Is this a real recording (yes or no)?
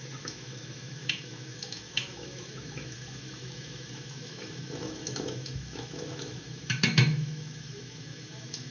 no